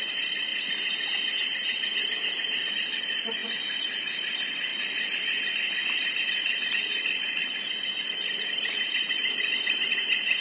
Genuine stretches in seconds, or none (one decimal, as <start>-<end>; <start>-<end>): 0.5-2.7